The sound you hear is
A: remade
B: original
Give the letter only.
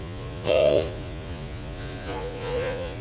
A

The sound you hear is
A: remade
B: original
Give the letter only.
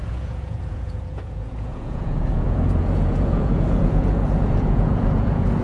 A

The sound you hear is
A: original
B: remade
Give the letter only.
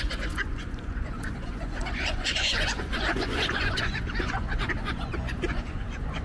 B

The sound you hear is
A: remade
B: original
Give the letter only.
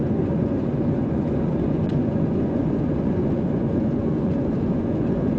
A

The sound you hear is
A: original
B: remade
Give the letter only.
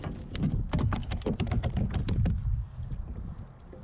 A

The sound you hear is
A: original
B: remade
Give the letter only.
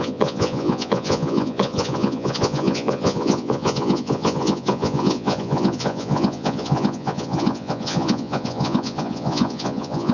B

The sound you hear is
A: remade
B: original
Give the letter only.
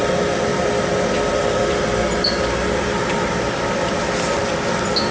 B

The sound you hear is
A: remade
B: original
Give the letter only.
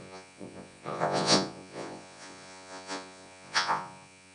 A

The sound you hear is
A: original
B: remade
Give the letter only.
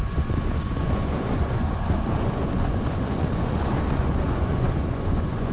B